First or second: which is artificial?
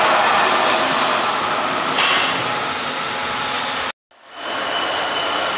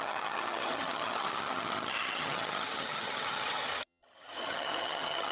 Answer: second